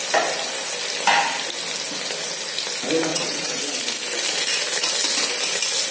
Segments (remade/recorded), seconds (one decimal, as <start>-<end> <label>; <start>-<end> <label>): 0.0-3.1 recorded; 3.1-3.6 remade; 3.6-5.9 recorded